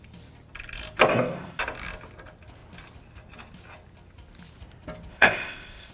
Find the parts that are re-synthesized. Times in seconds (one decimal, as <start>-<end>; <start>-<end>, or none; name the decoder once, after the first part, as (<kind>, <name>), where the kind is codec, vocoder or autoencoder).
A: 1.1-1.6 (codec, ZipCodec); 5.1-5.9